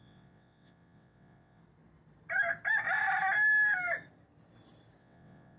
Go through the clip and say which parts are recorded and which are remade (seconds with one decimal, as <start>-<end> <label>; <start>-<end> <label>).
0.0-1.6 remade; 1.6-5.0 recorded; 5.0-5.6 remade